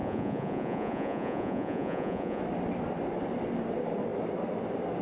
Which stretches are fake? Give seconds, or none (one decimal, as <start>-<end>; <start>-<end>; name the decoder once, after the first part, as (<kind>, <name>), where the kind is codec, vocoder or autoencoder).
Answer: 0.0-2.4 (vocoder, Vocos)